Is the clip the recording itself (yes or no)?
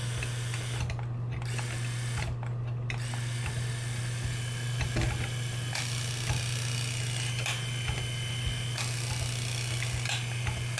yes